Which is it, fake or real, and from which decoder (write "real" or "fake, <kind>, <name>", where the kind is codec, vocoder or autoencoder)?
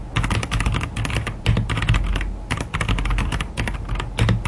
real